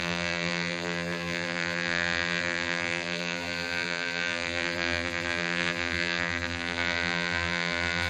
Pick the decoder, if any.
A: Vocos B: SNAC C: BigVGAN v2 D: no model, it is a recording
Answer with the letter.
C